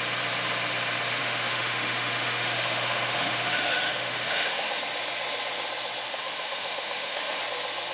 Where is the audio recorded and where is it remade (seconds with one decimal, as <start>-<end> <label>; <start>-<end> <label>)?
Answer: 0.0-1.2 recorded; 1.2-4.8 remade; 4.8-6.1 recorded; 6.1-7.4 remade; 7.4-7.9 recorded